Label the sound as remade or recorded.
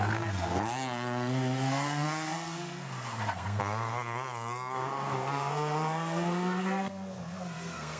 remade